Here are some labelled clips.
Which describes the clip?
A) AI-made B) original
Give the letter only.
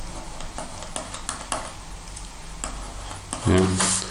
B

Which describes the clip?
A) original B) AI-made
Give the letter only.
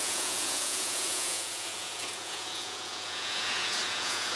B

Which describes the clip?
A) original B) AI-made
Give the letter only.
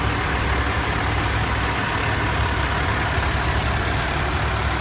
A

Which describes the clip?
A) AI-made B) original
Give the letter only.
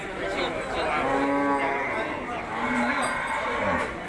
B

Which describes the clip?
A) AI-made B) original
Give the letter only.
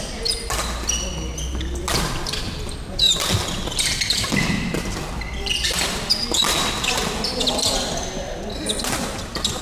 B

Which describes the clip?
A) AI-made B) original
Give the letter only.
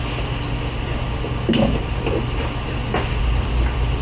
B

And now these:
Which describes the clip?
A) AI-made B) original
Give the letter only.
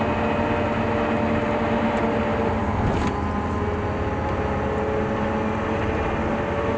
B